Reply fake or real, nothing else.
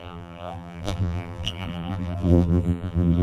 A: fake